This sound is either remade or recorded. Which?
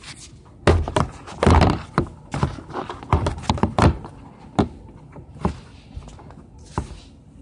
recorded